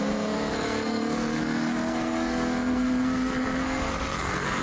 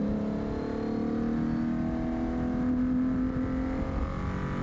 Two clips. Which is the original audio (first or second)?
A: second